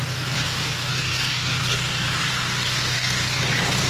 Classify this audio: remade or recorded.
remade